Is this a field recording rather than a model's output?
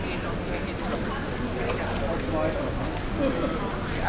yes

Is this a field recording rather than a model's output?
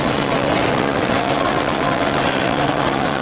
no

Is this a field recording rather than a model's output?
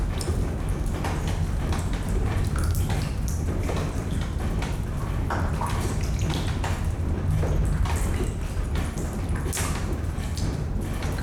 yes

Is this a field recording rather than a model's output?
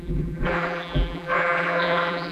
no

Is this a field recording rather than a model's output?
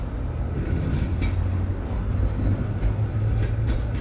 yes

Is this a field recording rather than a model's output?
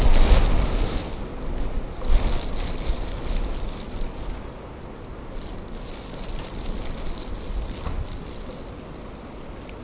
yes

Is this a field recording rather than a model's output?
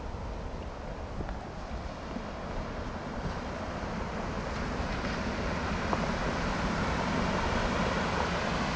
yes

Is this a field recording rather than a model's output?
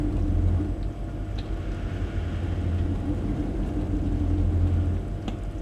yes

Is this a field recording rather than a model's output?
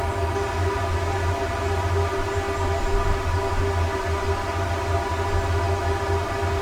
yes